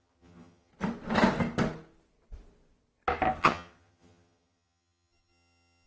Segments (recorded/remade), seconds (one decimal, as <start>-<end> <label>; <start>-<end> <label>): 0.0-0.7 remade; 0.7-3.4 recorded; 3.4-5.9 remade